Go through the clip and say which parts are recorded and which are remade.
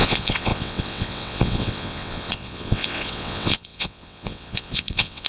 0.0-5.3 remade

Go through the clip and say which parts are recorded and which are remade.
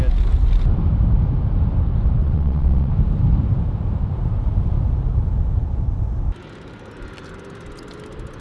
0.0-2.2 recorded; 2.2-2.9 remade; 2.9-8.4 recorded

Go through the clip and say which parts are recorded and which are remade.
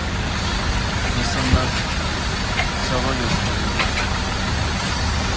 0.0-5.4 recorded